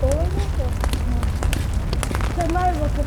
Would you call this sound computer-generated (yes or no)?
no